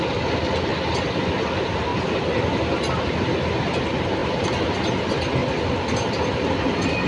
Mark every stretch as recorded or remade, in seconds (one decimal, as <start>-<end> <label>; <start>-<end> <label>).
0.0-0.7 recorded; 0.7-1.3 remade; 1.3-1.9 recorded; 1.9-3.2 remade; 3.2-4.2 recorded; 4.2-4.8 remade; 4.8-5.4 recorded; 5.4-7.1 remade